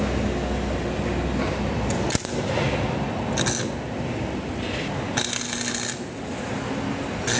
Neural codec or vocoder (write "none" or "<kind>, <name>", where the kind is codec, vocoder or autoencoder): none